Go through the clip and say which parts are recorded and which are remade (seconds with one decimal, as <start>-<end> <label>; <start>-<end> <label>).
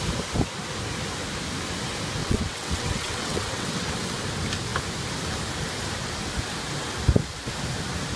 0.0-2.2 recorded; 2.2-3.9 remade; 3.9-8.2 recorded